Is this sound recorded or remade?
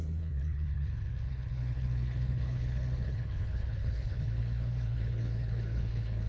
remade